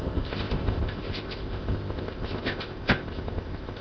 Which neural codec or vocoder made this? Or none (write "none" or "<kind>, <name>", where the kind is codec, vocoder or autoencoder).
codec, ZipCodec